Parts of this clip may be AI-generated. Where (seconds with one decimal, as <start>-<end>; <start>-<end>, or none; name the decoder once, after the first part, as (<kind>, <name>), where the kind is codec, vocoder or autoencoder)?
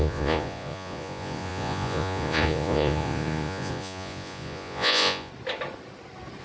0.0-5.3 (vocoder, Vocos)